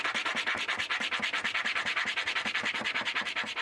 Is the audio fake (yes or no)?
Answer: yes